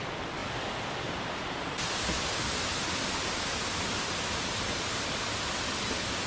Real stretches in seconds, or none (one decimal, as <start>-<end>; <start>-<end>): 0.0-6.3